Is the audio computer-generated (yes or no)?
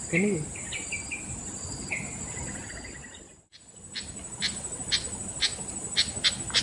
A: no